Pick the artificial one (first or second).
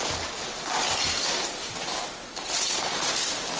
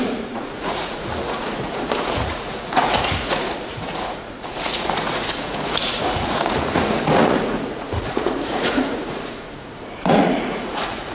second